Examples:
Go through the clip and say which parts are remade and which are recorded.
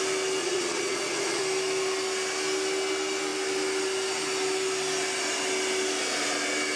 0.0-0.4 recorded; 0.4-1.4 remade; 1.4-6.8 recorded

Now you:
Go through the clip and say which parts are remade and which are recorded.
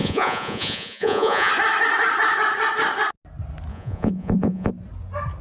0.0-1.5 remade; 1.5-3.7 recorded; 3.7-4.7 remade; 4.7-5.4 recorded